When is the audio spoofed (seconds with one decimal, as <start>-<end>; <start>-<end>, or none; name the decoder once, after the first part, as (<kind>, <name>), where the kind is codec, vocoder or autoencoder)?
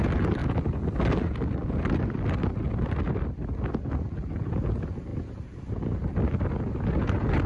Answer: 0.4-1.0 (vocoder, BigVGAN v2); 1.6-2.2; 5.1-5.6; 6.0-7.0